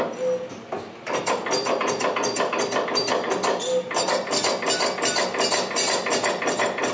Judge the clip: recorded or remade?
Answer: recorded